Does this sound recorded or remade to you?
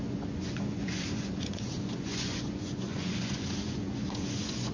remade